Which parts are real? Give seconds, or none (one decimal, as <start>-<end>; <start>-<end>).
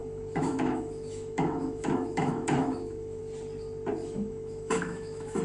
3.2-4.0